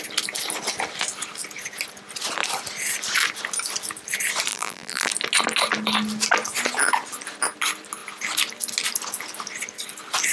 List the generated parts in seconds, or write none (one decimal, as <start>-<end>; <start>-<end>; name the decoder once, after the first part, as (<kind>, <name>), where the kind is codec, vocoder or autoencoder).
4.5-5.1 (vocoder, BigVGAN v2)

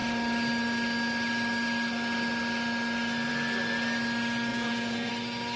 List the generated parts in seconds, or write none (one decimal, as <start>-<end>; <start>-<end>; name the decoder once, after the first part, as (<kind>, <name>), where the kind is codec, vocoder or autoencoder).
4.5-5.1 (vocoder, Vocos)

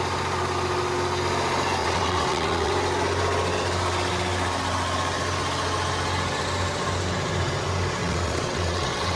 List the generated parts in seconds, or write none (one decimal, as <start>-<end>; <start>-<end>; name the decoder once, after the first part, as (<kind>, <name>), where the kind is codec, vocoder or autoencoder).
1.8-2.7 (vocoder, WaveNeXt); 8.0-9.2

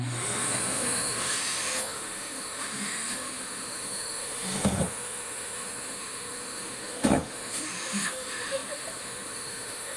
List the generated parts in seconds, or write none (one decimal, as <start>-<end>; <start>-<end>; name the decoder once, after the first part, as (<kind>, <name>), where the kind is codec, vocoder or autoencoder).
0.0-10.0 (autoencoder, DAC-VAE)

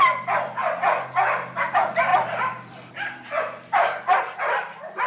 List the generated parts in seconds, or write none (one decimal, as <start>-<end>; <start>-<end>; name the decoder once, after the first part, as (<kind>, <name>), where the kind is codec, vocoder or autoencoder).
0.0-0.6 (vocoder, BigVGAN v2); 1.6-5.1

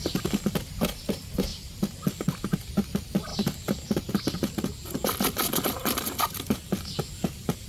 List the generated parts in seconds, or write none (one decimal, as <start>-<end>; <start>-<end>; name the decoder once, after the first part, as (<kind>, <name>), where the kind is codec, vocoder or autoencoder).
none

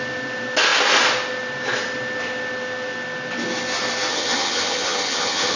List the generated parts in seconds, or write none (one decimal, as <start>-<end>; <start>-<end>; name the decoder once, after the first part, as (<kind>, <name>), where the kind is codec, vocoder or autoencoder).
4.1-5.6 (vocoder, HiFi-GAN)

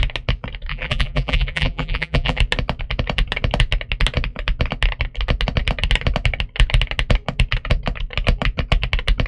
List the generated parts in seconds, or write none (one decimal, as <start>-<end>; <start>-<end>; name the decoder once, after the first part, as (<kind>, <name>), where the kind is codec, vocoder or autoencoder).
0.7-2.4 (vocoder, BigVGAN v2)